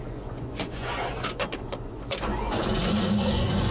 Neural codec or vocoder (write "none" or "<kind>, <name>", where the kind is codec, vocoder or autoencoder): vocoder, Vocos